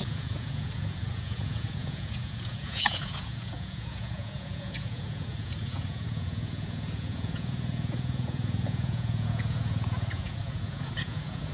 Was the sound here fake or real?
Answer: fake